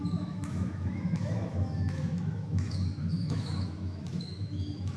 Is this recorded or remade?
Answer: remade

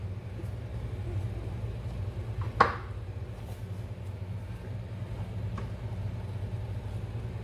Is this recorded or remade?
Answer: recorded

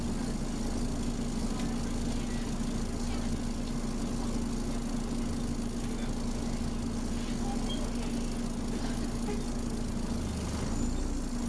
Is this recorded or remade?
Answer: recorded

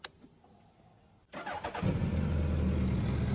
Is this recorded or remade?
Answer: recorded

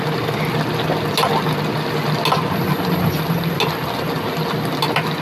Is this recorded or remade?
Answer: recorded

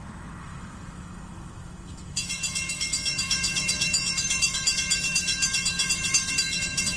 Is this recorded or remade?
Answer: remade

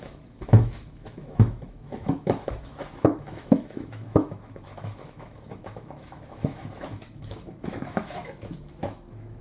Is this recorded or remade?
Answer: remade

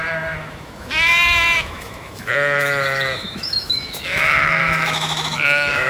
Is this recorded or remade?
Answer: remade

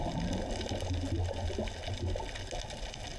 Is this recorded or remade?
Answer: recorded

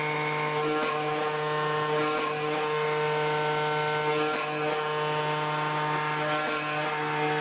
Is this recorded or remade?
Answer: recorded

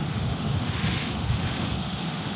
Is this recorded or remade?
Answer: remade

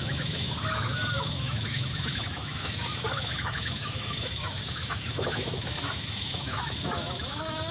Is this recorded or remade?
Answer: remade